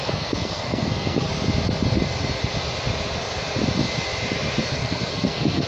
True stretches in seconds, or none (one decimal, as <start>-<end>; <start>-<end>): 1.3-4.7